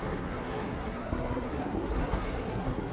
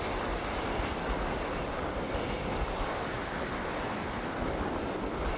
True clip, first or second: second